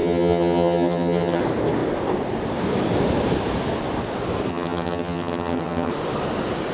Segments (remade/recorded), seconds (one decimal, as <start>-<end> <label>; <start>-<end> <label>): 0.0-1.4 remade; 1.4-4.5 recorded; 4.5-5.9 remade; 5.9-6.7 recorded